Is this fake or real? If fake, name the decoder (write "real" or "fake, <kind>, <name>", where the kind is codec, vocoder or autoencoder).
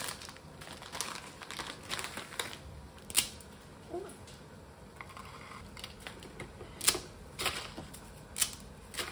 real